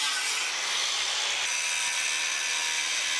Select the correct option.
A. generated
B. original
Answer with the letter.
B